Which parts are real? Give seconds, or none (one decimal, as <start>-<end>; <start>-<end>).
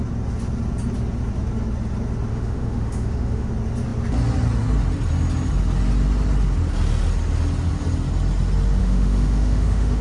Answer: 0.0-2.3; 3.5-8.8